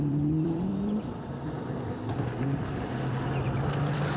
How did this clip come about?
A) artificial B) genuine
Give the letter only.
A